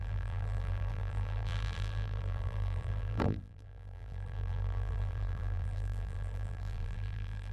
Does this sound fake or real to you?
fake